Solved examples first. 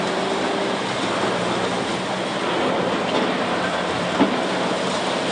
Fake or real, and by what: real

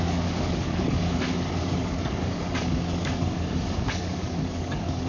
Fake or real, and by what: fake, codec, DAC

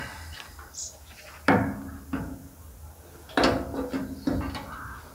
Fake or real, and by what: real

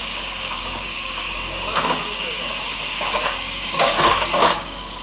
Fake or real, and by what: fake, codec, DAC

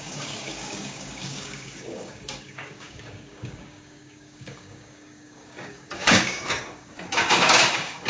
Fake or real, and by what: fake, codec, DAC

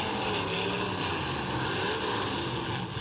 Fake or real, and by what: real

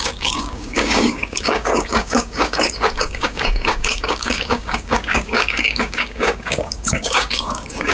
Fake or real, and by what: fake, codec, DAC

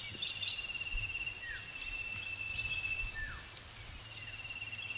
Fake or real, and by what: real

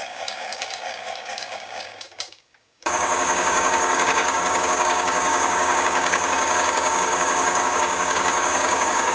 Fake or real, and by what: fake, codec, DAC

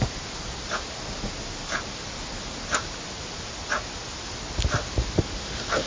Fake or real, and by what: real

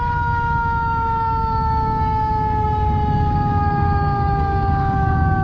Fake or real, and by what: fake, codec, DAC